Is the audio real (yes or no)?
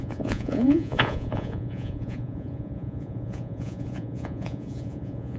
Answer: no